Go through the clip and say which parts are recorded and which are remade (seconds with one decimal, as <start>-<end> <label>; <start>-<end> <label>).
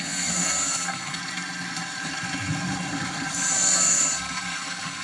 0.0-1.2 remade; 1.2-3.5 recorded; 3.5-5.0 remade